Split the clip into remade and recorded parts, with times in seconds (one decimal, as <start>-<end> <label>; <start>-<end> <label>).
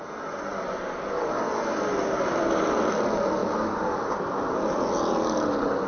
0.0-5.9 recorded